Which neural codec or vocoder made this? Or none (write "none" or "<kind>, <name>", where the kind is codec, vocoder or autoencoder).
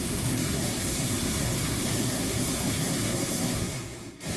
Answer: codec, SNAC